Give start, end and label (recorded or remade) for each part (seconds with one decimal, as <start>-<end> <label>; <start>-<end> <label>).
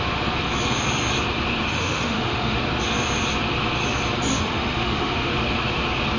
0.0-1.7 recorded; 1.7-2.6 remade; 2.6-4.3 recorded; 4.3-5.3 remade; 5.3-6.2 recorded